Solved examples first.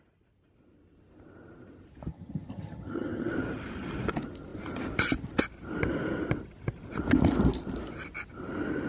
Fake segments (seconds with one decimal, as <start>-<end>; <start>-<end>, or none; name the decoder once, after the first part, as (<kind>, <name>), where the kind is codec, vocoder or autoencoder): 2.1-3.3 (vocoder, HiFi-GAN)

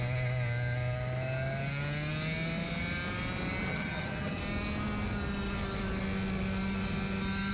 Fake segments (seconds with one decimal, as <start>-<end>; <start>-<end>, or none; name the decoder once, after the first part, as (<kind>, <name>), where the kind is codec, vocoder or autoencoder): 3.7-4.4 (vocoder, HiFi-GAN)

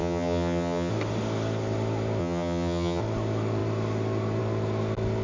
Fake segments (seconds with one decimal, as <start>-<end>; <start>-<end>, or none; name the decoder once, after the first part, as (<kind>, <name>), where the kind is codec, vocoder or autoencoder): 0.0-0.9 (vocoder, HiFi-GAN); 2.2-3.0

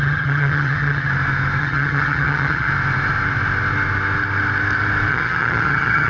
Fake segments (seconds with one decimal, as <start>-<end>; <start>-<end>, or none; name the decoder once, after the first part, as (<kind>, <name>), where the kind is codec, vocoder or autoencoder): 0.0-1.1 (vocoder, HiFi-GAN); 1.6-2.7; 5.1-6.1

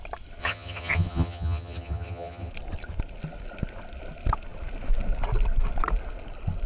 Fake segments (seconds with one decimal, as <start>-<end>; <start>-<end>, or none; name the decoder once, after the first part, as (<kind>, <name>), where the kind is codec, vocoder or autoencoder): 0.4-2.5 (vocoder, HiFi-GAN)